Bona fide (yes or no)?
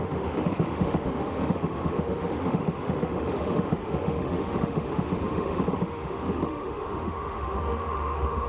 no